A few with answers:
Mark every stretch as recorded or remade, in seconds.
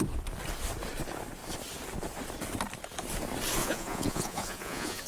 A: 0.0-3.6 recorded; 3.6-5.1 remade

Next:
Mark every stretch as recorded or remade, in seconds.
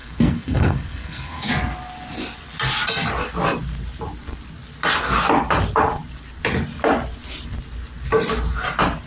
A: 0.0-1.5 remade; 1.5-9.1 recorded